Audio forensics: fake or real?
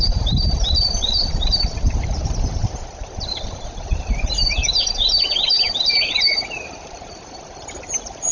fake